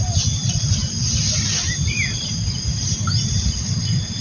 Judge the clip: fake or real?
fake